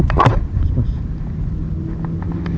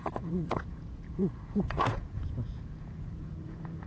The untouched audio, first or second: first